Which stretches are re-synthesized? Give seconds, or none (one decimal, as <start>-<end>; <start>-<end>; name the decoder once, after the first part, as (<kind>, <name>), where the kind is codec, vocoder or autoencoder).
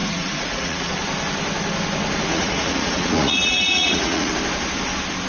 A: 0.0-0.9 (vocoder, Vocos); 2.3-4.3